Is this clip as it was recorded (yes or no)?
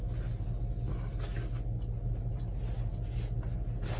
yes